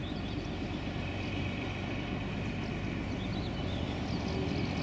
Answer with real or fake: real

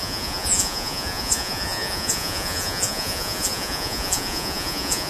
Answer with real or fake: fake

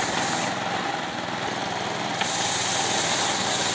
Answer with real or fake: real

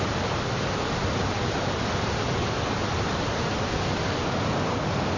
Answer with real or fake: real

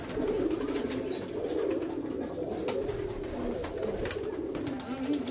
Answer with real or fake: real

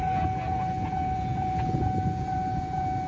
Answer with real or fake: fake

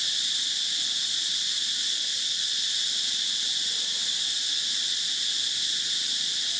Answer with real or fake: real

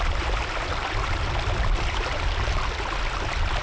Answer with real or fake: real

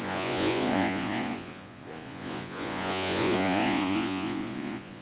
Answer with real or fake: fake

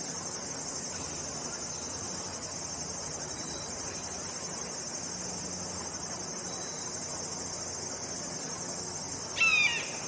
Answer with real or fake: real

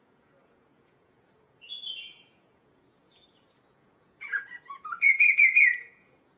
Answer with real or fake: fake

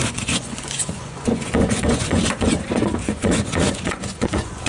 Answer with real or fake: fake